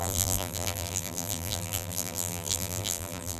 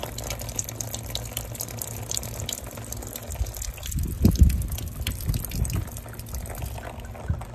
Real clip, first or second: second